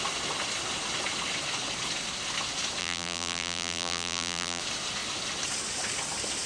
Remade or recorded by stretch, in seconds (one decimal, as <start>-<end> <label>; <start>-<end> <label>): 0.0-2.8 recorded; 2.8-4.6 remade; 4.6-6.5 recorded